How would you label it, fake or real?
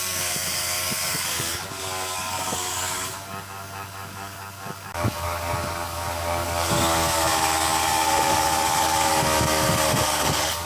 fake